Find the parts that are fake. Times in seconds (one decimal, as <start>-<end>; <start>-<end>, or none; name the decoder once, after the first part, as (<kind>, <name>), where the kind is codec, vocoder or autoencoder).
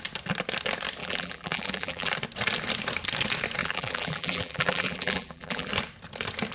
1.0-2.1 (vocoder, BigVGAN v2); 3.6-5.7